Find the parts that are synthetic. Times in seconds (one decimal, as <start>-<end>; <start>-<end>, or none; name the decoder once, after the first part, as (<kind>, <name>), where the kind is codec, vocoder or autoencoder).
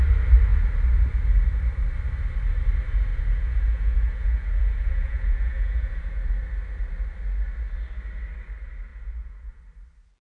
3.1-6.3 (vocoder, Vocos); 8.9-9.6